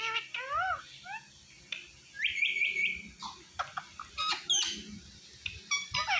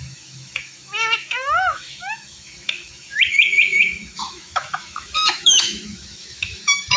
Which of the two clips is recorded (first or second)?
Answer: first